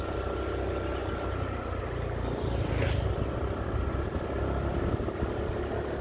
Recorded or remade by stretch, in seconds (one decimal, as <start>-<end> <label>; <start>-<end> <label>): 0.0-6.0 recorded